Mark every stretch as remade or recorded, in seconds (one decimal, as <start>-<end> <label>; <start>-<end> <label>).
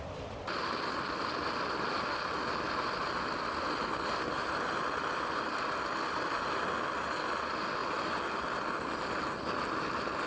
0.0-10.3 recorded